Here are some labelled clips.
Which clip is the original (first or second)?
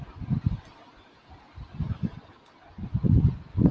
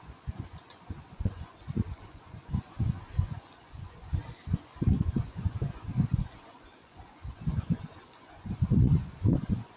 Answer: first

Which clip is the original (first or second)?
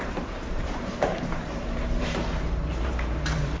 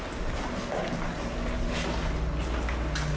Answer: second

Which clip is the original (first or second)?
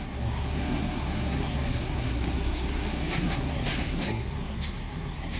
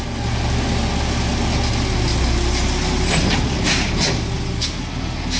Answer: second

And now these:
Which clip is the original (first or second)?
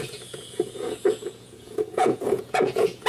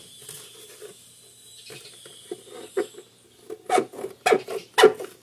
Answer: second